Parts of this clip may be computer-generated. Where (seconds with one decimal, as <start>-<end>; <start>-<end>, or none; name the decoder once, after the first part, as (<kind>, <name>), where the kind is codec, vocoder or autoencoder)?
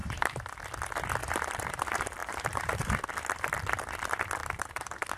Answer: 0.0-0.5 (vocoder, BigVGAN v2); 1.2-1.8; 2.2-3.0; 4.4-5.2